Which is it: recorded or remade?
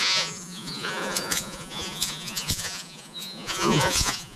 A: remade